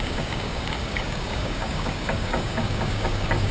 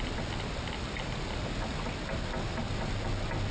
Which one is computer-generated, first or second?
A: first